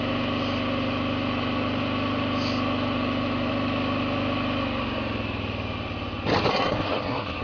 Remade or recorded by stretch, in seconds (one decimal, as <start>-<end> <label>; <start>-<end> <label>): 0.0-6.5 recorded; 6.5-7.4 remade